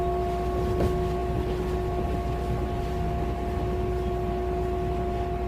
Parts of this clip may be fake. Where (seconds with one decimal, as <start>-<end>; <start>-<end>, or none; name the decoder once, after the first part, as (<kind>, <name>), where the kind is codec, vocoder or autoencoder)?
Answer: none